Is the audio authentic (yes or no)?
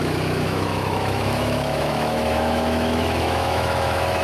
no